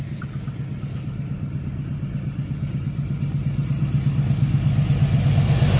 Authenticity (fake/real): real